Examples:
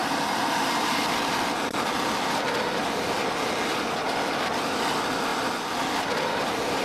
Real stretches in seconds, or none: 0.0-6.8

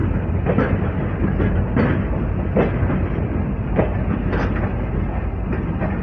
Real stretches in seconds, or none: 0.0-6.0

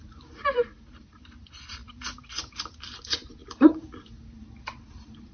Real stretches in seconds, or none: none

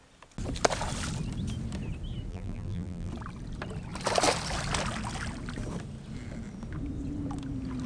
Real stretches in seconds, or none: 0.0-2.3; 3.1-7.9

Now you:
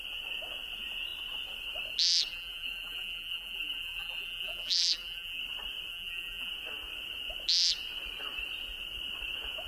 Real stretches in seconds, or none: 0.0-2.3; 5.4-5.9; 6.5-9.7

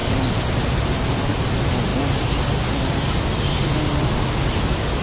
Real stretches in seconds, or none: 0.0-5.0